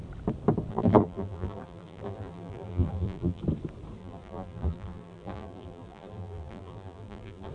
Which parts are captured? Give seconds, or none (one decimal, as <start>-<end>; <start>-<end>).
0.0-0.7; 3.4-4.0